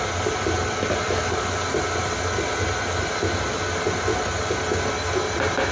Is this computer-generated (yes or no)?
no